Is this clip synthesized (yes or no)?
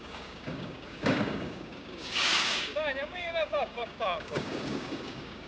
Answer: yes